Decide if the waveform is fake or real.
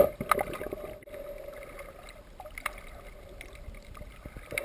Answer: real